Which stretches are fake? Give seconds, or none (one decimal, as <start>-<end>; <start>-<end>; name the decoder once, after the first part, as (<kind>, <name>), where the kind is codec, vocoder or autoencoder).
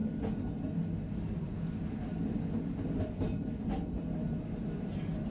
none